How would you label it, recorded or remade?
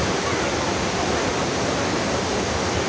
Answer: recorded